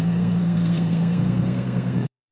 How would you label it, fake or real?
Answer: fake